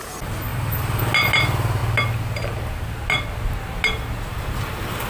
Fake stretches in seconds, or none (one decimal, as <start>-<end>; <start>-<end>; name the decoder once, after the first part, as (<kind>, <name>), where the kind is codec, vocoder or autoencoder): 0.5-1.0 (vocoder, BigVGAN v2)